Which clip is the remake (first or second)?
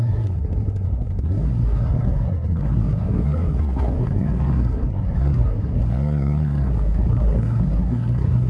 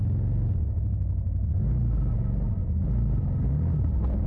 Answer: first